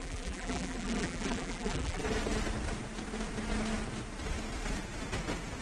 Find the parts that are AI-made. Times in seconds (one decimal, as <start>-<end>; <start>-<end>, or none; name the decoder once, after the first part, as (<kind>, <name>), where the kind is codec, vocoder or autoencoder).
0.0-2.0 (vocoder, BigVGAN v2)